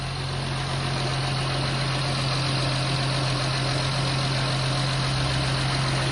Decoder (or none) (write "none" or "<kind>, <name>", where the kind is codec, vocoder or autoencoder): none